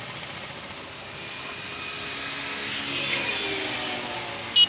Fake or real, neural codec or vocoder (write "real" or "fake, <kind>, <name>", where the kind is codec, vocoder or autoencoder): real